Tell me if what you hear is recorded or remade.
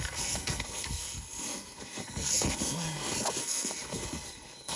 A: remade